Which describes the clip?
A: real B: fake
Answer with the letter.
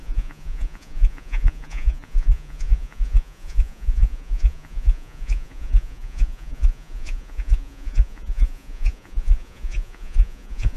B